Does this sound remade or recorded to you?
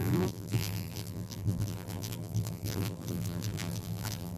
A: remade